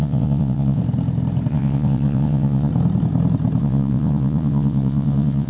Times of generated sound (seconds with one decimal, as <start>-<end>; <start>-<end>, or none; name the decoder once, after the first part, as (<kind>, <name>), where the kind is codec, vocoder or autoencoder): 0.0-0.8 (vocoder, WaveNeXt); 1.5-2.7; 3.6-5.5